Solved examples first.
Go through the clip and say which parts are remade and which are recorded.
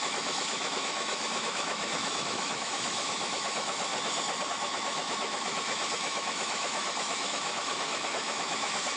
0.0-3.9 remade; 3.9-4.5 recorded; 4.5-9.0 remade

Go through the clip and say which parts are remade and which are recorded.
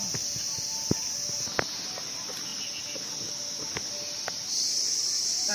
0.0-5.5 recorded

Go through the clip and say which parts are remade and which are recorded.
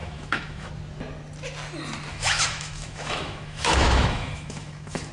0.0-0.7 remade; 0.7-2.1 recorded; 2.1-5.1 remade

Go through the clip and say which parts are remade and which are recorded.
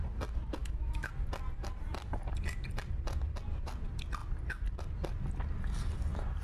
0.0-0.6 recorded; 0.6-1.1 remade; 1.1-6.4 recorded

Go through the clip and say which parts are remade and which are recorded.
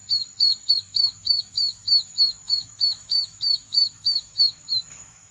0.0-0.7 recorded; 0.7-5.3 remade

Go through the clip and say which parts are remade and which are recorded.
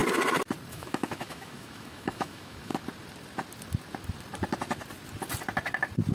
0.0-0.7 recorded; 0.7-2.7 remade; 2.7-6.1 recorded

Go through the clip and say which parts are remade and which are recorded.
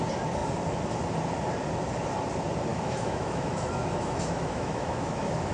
0.0-2.7 recorded; 2.7-5.5 remade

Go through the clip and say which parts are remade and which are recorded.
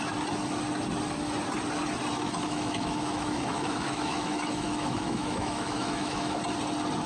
0.0-2.1 recorded; 2.1-6.4 remade; 6.4-7.1 recorded